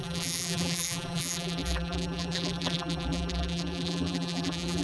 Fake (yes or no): yes